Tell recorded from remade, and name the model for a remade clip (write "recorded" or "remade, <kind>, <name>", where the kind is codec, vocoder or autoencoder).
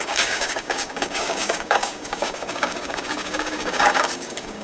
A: remade, codec, DAC